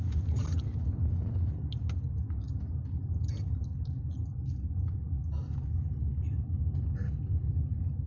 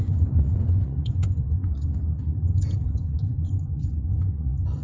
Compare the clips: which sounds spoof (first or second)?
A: second